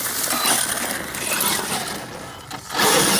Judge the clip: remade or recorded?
recorded